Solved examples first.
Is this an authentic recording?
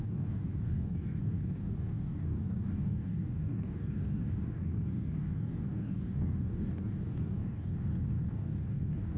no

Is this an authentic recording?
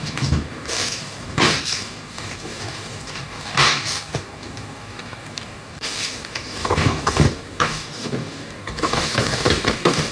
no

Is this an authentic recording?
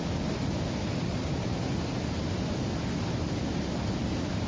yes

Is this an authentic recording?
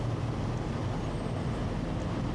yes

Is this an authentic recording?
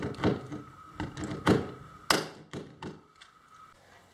yes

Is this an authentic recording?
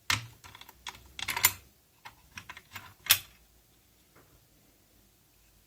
yes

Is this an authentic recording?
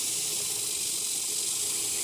yes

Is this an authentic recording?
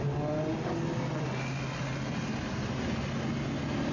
yes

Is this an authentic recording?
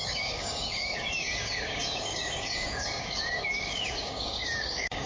no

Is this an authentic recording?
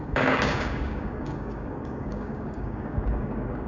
no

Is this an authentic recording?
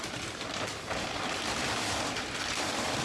yes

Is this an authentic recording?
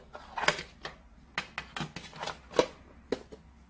yes